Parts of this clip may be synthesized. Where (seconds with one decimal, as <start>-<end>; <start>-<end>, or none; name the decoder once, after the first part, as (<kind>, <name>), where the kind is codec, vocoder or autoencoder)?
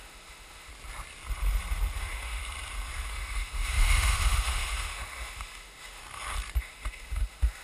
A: 0.0-0.7 (autoencoder, DAC-VAE); 2.0-2.4; 3.1-6.0; 6.6-7.6